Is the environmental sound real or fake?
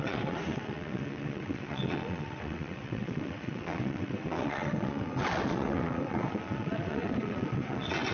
fake